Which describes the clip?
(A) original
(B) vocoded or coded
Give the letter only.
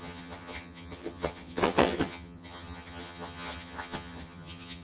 B